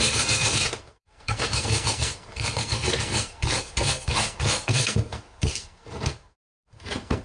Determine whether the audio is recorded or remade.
remade